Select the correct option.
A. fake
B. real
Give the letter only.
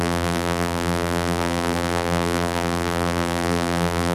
A